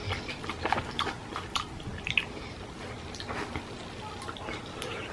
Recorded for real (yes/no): yes